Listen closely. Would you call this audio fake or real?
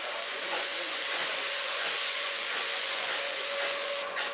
fake